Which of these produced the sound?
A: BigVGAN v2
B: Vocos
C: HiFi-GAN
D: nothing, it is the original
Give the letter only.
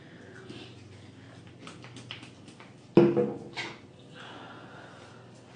D